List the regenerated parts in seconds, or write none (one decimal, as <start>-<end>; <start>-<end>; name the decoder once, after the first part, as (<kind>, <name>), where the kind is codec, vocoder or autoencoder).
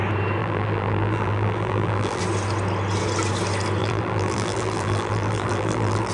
0.4-2.2 (vocoder, BigVGAN v2); 3.8-6.1